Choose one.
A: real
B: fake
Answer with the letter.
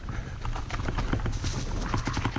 A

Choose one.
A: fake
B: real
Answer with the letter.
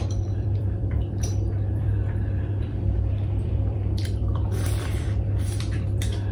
A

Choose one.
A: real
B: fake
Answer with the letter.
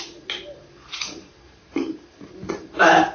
A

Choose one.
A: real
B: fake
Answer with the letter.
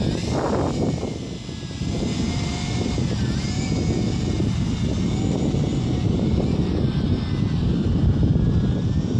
A